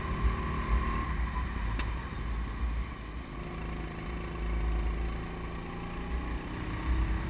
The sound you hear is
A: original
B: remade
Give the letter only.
A